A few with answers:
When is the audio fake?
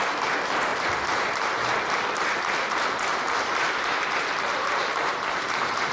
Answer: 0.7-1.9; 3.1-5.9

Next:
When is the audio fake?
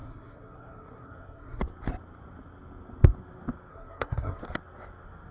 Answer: 0.0-1.6; 3.7-4.4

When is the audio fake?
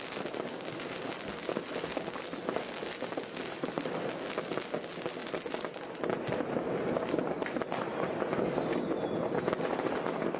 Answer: none